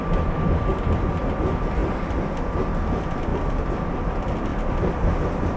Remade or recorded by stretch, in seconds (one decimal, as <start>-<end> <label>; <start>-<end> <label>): 0.0-4.5 recorded; 4.5-5.6 remade